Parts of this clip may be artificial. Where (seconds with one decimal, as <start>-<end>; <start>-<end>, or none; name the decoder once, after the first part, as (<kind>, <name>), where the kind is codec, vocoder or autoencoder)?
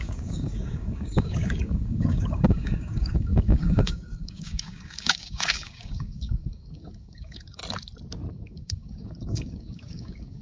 0.0-7.6 (codec, DAC); 8.3-10.4